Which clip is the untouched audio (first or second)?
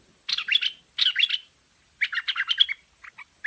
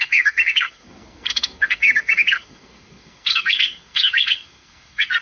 first